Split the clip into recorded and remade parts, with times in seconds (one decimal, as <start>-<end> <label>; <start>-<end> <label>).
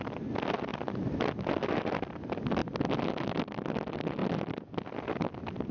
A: 0.0-5.7 recorded